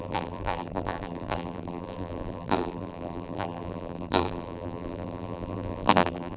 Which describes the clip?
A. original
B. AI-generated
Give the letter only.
B